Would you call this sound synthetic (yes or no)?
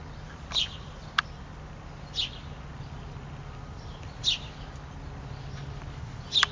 no